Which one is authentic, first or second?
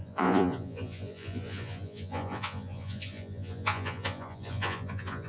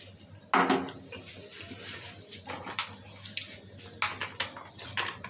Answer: second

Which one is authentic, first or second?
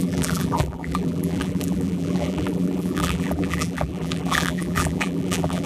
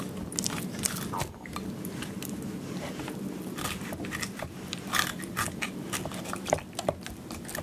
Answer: second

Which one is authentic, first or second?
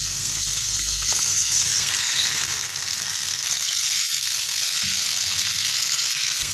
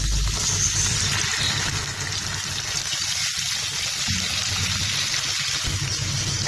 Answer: second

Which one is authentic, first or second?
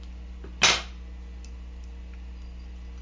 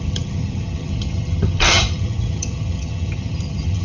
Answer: first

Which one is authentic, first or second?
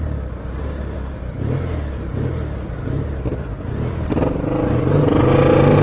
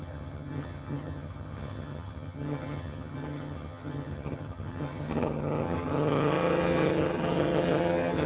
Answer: first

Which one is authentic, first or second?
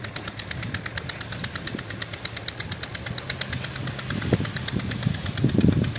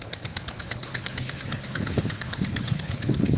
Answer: first